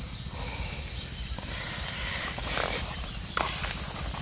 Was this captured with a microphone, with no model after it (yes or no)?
yes